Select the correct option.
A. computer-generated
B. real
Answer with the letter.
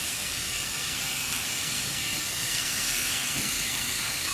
A